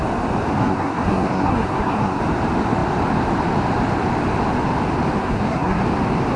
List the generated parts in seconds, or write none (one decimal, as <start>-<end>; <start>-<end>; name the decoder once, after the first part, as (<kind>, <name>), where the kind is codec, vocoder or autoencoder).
0.5-2.2 (codec, SNAC); 5.2-5.8